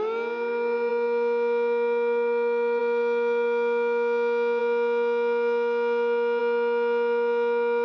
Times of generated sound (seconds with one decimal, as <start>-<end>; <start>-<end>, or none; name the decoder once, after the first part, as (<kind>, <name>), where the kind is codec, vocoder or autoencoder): none